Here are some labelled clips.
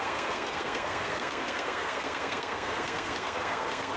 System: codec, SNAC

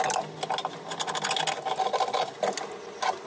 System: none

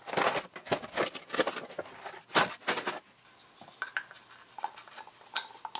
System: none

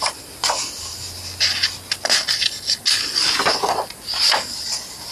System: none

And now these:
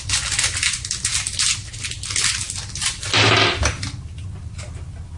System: none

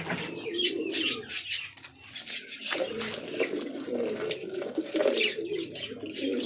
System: none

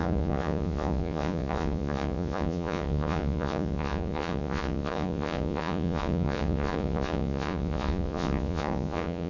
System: vocoder, Vocos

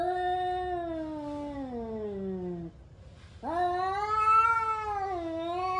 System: none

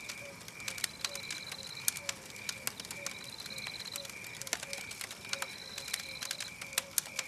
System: none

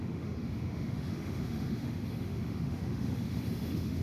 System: autoencoder, DAC-VAE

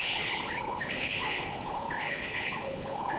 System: codec, HILCodec